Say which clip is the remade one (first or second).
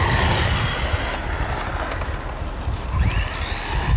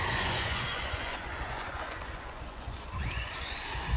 second